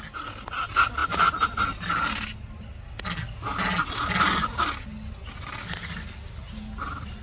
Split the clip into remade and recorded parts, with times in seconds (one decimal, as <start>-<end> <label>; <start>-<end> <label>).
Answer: 0.0-7.2 recorded